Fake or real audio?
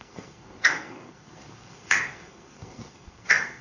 fake